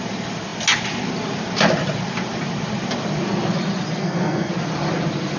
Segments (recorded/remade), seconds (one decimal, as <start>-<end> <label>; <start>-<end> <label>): 0.0-4.0 recorded; 4.0-4.5 remade; 4.5-5.4 recorded